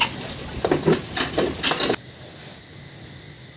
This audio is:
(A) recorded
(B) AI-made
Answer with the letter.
A